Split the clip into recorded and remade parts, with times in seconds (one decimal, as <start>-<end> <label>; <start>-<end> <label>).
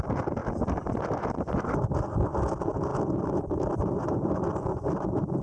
0.0-0.4 recorded; 0.4-1.2 remade; 1.2-2.9 recorded; 2.9-4.9 remade; 4.9-5.4 recorded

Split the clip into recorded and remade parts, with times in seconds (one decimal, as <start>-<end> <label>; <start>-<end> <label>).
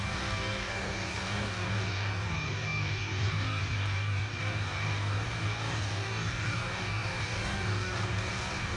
0.0-8.8 remade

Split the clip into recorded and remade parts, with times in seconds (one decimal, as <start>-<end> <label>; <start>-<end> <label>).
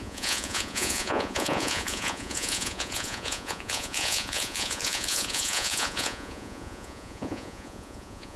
0.0-8.4 remade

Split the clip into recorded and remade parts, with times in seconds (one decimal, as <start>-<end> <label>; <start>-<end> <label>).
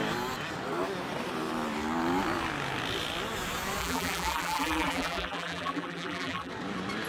0.0-3.8 recorded; 3.8-6.5 remade; 6.5-7.1 recorded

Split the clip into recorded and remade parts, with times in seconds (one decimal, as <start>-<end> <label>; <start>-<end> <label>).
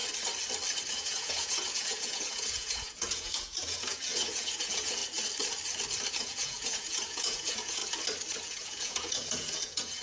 0.0-0.9 recorded; 0.9-5.0 remade; 5.0-6.1 recorded; 6.1-7.8 remade; 7.8-8.4 recorded; 8.4-10.0 remade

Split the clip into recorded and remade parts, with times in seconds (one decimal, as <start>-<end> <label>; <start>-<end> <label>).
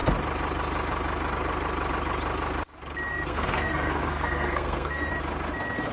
0.0-3.1 recorded; 3.1-5.1 remade; 5.1-5.9 recorded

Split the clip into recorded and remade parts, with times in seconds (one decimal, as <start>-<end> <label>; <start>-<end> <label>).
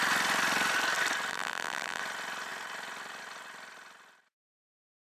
0.0-1.3 recorded; 1.3-2.0 remade; 2.0-5.1 recorded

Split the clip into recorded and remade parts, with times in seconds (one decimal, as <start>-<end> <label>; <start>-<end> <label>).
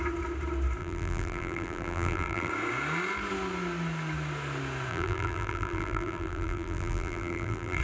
0.0-0.8 recorded; 0.8-2.5 remade; 2.5-4.9 recorded; 4.9-7.8 remade